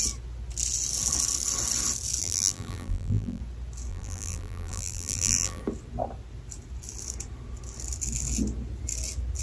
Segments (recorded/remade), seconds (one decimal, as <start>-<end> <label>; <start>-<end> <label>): 0.0-2.2 recorded; 2.2-3.4 remade; 3.4-3.9 recorded; 3.9-5.6 remade; 5.6-9.4 recorded